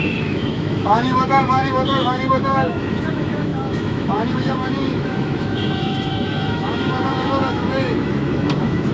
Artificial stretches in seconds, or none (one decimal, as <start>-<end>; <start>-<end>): 0.0-8.9